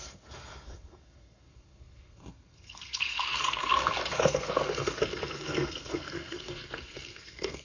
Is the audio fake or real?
fake